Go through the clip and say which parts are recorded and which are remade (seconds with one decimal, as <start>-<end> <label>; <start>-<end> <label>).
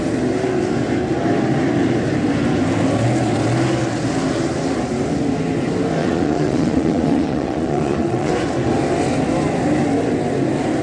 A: 0.0-6.0 recorded; 6.0-8.3 remade; 8.3-10.8 recorded